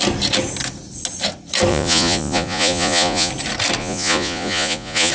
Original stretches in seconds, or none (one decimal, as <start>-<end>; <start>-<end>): 0.0-1.7; 3.3-3.8